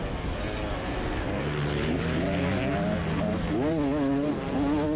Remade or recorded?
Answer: recorded